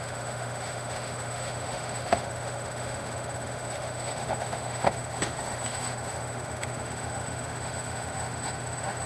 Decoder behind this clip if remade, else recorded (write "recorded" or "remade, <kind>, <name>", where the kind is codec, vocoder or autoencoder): remade, autoencoder, DAC-VAE